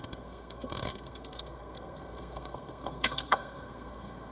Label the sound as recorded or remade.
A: remade